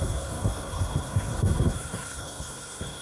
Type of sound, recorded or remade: remade